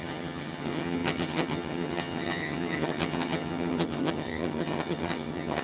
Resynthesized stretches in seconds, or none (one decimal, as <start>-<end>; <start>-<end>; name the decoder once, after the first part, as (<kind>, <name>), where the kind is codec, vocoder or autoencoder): 0.0-5.6 (vocoder, HiFi-GAN)